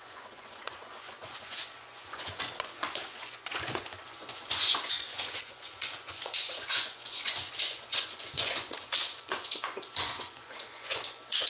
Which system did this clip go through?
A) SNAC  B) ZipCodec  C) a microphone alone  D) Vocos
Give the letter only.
D